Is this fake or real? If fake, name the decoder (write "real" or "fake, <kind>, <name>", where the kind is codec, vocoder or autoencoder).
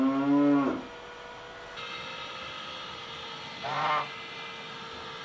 real